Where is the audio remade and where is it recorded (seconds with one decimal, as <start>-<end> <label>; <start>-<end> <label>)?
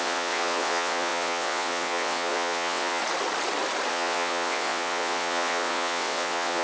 0.0-3.0 remade; 3.0-3.9 recorded; 3.9-6.6 remade